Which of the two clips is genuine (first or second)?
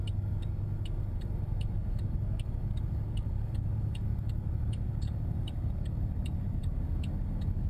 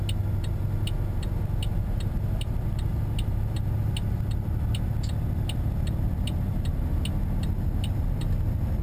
second